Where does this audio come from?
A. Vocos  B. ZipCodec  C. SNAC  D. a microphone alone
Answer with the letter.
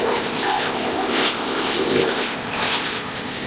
B